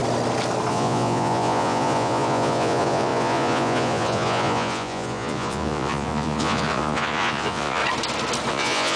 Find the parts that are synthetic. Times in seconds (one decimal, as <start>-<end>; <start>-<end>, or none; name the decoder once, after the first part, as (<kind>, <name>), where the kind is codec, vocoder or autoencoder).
0.7-7.8 (vocoder, Vocos); 8.5-9.0

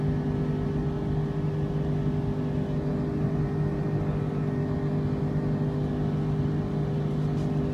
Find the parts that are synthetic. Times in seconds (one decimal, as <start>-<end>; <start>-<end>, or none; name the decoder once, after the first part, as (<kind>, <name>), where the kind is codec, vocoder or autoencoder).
none